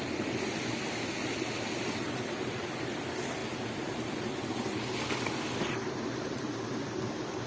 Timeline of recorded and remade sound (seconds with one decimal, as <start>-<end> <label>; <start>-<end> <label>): 0.0-7.5 recorded